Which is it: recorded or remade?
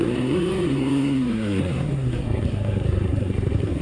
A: remade